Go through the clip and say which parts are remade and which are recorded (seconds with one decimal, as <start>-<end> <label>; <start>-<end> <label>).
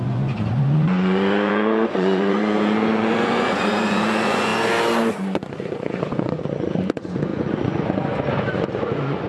0.0-4.5 remade; 4.5-5.1 recorded; 5.1-9.3 remade